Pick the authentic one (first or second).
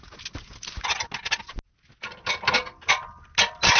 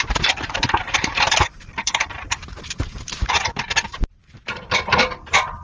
first